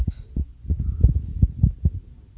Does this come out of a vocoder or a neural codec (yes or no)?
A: no